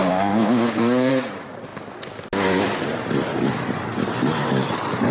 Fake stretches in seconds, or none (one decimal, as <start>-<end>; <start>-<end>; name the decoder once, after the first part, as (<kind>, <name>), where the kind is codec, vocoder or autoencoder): 0.0-1.1 (codec, DAC)